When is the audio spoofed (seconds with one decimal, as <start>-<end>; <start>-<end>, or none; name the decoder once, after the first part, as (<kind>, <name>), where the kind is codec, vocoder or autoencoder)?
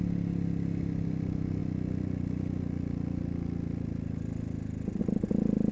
none